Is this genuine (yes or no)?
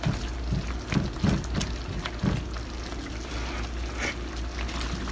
yes